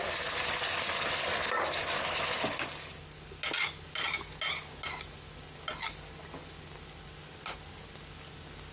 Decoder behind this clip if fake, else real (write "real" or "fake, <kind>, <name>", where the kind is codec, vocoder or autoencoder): real